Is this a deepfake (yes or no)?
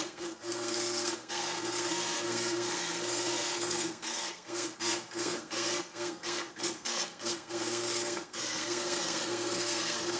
yes